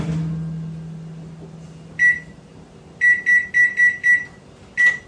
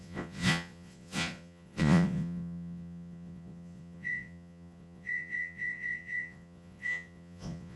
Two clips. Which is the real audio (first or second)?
first